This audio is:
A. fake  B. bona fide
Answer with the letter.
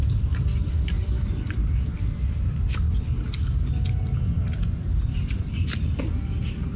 B